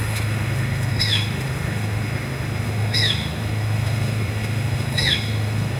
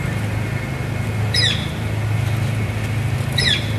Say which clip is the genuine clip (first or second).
second